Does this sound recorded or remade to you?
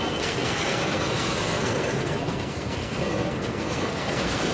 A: remade